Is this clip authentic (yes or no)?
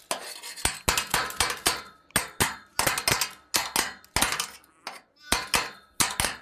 yes